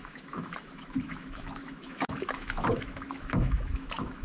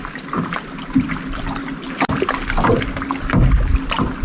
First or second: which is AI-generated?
first